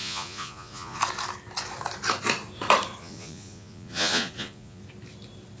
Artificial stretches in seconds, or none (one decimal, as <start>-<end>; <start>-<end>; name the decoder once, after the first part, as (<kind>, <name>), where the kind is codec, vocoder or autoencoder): 0.0-1.0 (vocoder, Vocos); 3.0-4.8